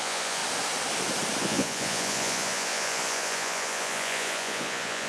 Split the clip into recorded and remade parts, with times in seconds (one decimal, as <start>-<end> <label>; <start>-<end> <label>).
0.0-0.4 remade; 0.4-1.4 recorded; 1.4-5.1 remade